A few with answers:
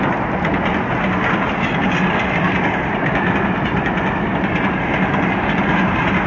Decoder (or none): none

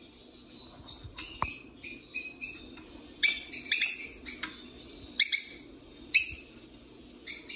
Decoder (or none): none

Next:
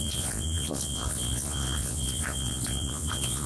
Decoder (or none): vocoder, Vocos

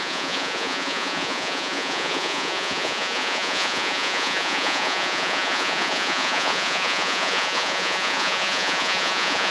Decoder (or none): vocoder, Vocos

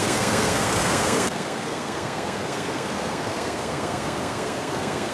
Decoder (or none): codec, SNAC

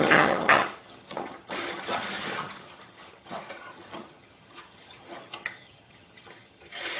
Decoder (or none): vocoder, HiFi-GAN